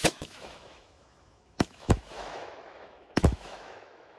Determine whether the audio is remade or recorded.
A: remade